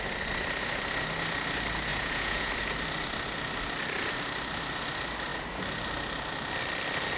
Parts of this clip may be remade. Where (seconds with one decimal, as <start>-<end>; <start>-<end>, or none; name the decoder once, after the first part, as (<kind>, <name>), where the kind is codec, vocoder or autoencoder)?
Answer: 1.9-2.5 (vocoder, Vocos)